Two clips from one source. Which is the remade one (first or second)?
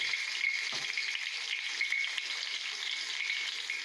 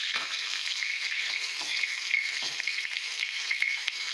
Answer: second